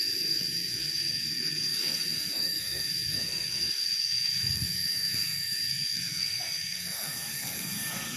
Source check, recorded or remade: remade